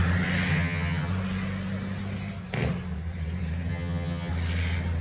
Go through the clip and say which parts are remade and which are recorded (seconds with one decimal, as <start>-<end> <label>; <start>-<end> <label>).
0.0-0.5 recorded; 0.5-1.1 remade; 1.1-3.7 recorded; 3.7-4.3 remade; 4.3-5.0 recorded